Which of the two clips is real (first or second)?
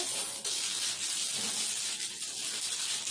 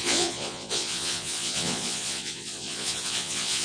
first